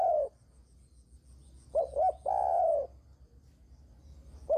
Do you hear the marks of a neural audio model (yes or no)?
no